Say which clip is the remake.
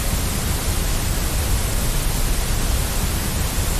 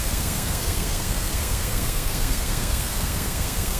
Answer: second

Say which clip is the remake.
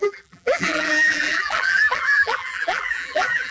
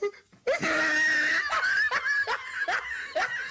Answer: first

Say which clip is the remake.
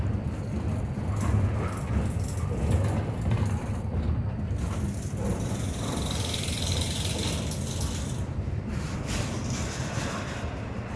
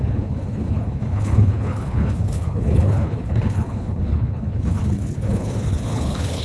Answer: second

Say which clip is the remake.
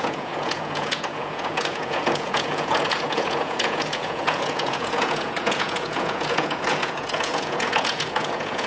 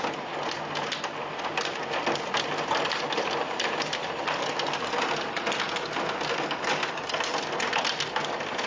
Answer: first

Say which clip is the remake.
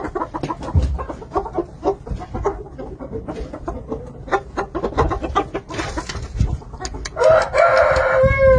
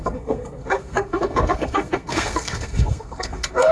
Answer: second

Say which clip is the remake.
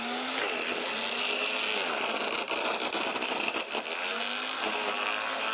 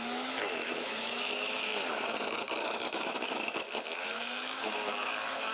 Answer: second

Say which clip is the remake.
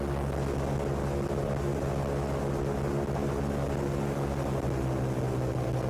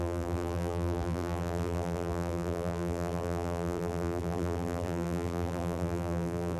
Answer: second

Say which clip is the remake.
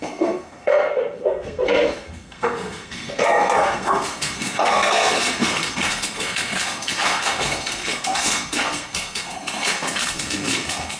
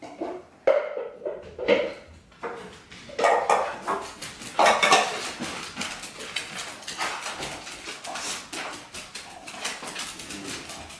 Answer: first